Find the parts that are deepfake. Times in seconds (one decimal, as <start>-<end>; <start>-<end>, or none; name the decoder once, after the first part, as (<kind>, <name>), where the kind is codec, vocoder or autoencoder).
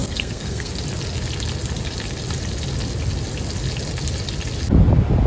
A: 0.0-0.7 (codec, SNAC)